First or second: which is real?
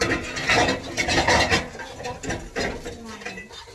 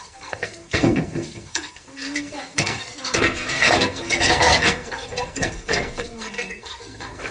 first